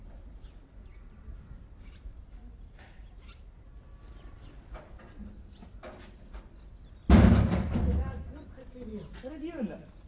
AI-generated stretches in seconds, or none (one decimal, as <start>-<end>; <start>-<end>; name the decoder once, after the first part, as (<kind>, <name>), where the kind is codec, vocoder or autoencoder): none